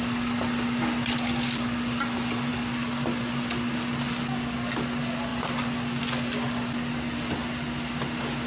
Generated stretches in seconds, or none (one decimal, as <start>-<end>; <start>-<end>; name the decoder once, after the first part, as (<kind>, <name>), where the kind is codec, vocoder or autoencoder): none